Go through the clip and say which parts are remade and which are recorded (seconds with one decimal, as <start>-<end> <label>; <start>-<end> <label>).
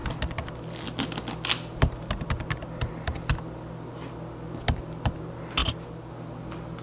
0.0-5.6 recorded; 5.6-6.1 remade; 6.1-6.8 recorded